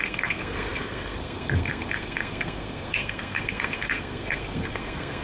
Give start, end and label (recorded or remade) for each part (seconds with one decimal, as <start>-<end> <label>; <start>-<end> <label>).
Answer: 0.0-5.2 remade